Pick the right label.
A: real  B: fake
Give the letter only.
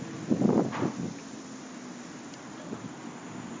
A